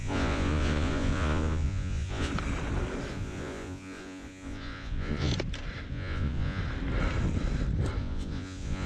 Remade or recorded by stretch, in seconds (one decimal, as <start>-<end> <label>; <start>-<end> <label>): 0.0-2.3 remade; 2.3-3.1 recorded; 3.1-5.3 remade; 5.3-5.9 recorded; 5.9-6.6 remade; 6.6-8.0 recorded; 8.0-8.9 remade